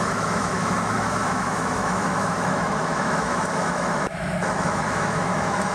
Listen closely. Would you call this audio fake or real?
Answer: fake